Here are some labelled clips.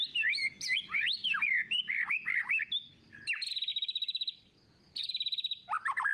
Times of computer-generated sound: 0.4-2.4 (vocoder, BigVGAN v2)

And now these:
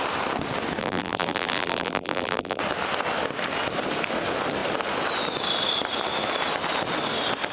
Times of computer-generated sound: 0.8-2.6 (vocoder, BigVGAN v2)

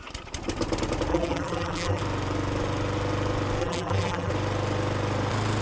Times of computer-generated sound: 1.1-2.0 (vocoder, BigVGAN v2); 3.6-4.3

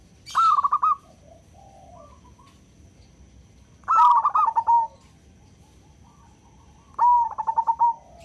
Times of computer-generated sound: none

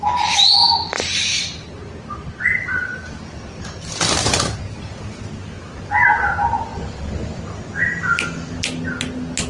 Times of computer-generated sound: 0.6-4.8 (vocoder, BigVGAN v2); 6.7-7.4

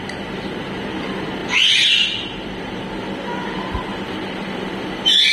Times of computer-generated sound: 1.4-2.8 (vocoder, BigVGAN v2); 3.9-5.3